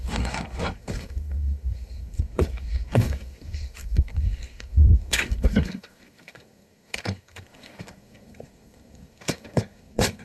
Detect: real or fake fake